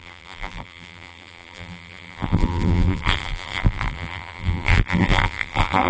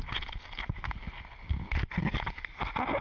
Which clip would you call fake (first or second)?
first